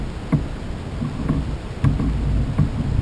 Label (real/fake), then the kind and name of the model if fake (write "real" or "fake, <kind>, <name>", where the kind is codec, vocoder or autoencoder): real